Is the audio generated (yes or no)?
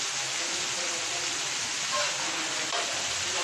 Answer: no